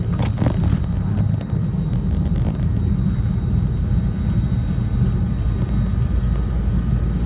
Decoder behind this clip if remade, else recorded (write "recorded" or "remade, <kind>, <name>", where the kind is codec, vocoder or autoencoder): recorded